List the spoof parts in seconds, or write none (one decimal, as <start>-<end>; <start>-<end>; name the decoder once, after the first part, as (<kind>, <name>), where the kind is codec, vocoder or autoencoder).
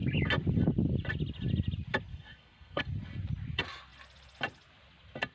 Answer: 2.1-2.8 (codec, SNAC)